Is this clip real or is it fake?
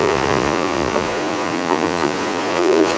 fake